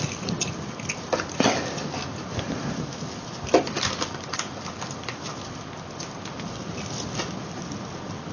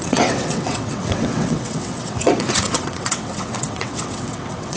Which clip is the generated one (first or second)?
second